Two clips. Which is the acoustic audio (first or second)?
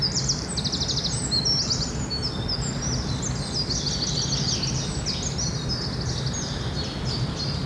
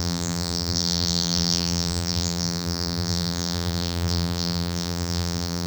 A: first